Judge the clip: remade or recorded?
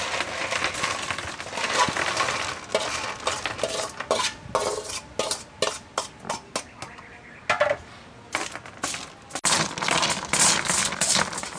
recorded